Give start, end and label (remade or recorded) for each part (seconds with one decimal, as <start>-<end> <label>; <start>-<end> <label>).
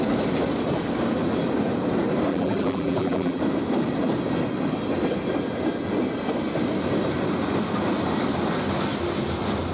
0.0-2.3 recorded; 2.3-3.4 remade; 3.4-9.7 recorded